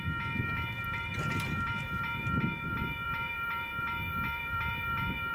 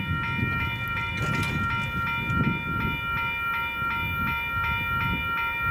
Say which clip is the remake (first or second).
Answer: first